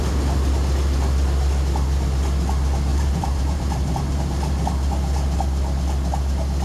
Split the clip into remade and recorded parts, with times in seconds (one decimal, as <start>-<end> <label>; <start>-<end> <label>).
0.0-2.9 recorded; 2.9-4.2 remade; 4.2-6.6 recorded